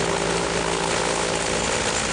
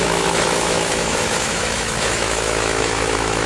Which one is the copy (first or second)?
second